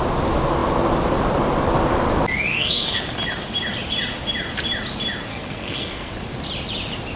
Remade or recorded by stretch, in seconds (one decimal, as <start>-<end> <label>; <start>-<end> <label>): 0.0-2.5 recorded; 2.5-3.0 remade; 3.0-5.3 recorded; 5.3-6.1 remade; 6.1-7.2 recorded